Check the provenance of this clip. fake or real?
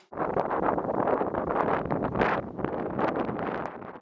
real